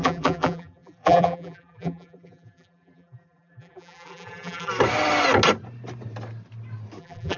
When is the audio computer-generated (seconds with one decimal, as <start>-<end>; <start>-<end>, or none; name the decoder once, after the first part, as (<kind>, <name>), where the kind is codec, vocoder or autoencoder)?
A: 0.0-4.7 (vocoder, BigVGAN v2); 7.0-7.4